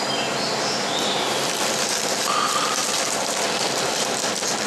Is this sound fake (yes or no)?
no